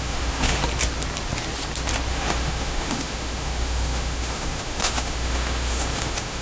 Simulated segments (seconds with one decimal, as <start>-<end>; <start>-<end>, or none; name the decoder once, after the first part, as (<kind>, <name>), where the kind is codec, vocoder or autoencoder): 0.0-0.6 (autoencoder, DAC-VAE); 2.1-6.4